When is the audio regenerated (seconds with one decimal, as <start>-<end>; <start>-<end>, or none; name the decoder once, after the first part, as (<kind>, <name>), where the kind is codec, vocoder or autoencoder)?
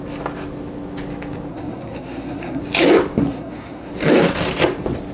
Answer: 1.5-2.6 (codec, SNAC); 3.2-3.9